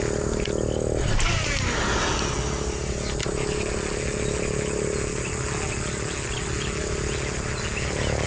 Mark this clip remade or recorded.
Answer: recorded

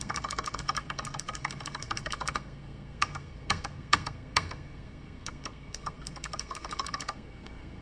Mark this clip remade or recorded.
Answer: remade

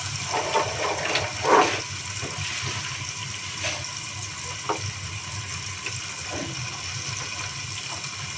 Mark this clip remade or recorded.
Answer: recorded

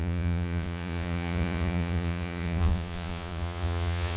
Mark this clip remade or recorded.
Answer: remade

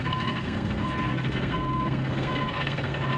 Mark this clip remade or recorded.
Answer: remade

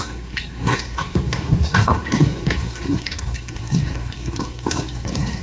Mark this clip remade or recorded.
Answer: remade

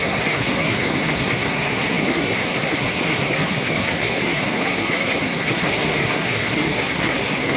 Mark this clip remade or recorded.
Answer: remade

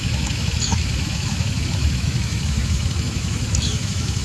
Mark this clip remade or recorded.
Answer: remade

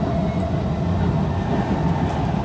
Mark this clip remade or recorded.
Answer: recorded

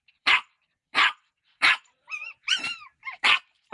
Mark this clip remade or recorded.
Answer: remade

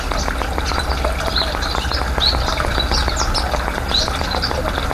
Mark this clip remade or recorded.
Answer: recorded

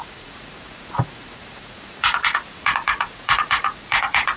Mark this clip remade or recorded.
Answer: remade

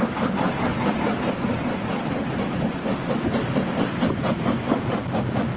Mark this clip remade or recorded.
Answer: remade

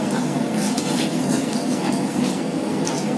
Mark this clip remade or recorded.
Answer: remade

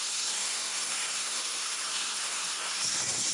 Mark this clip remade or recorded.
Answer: remade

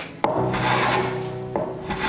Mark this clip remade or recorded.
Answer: recorded